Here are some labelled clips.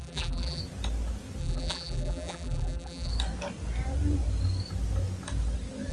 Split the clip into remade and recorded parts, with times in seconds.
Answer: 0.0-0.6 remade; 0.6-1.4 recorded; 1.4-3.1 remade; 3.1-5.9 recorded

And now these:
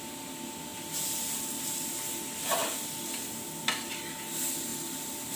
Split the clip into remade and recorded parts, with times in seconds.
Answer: 0.0-5.4 recorded